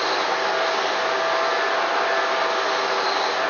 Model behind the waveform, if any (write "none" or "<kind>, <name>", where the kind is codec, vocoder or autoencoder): none